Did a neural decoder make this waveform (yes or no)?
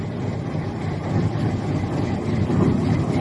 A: no